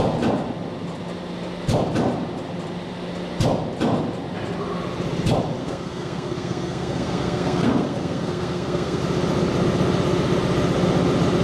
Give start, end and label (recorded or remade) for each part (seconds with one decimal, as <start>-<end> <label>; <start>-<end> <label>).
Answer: 0.0-5.6 recorded; 5.6-9.0 remade; 9.0-11.4 recorded